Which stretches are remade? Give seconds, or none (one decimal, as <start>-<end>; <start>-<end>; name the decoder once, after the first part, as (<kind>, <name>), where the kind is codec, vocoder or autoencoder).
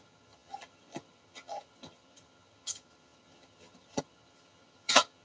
0.0-5.2 (vocoder, HiFi-GAN)